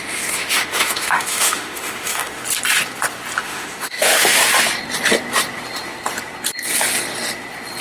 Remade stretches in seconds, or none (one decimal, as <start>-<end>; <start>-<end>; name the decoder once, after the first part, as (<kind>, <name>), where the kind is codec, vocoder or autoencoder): 0.0-2.4 (autoencoder, DAC-VAE); 3.4-4.4